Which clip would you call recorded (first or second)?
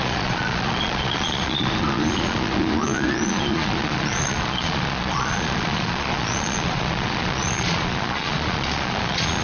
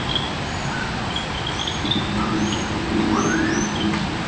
second